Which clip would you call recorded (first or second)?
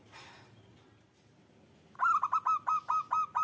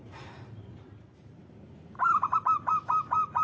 first